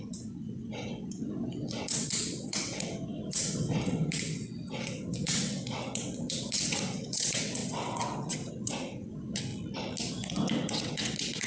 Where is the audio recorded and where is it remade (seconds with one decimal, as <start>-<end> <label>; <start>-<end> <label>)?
0.0-9.5 remade; 9.5-10.1 recorded; 10.1-11.5 remade